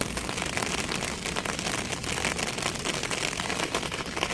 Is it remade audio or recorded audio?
recorded